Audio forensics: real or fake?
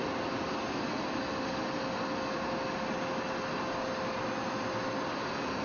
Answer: real